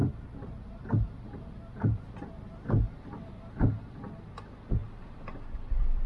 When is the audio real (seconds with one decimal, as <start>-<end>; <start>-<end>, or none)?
2.1-4.8